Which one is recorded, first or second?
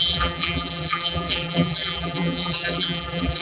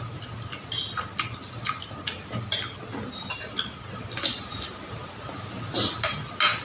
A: second